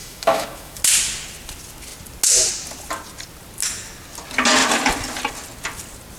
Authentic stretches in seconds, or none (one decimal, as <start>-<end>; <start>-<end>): 0.8-6.2